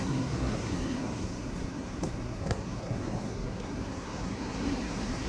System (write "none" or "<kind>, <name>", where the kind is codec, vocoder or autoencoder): codec, SNAC